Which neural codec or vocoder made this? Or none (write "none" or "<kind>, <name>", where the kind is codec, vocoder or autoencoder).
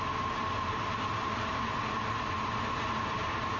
none